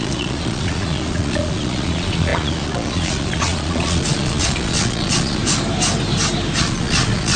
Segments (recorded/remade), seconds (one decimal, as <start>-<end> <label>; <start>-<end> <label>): 0.0-5.4 remade; 5.4-6.6 recorded; 6.6-7.4 remade